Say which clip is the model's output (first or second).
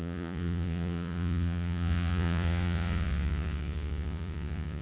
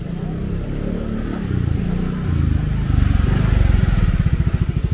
first